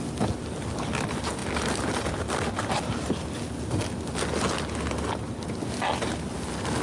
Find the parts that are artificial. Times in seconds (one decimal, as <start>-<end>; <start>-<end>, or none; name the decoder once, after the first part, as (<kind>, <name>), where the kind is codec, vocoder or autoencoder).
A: none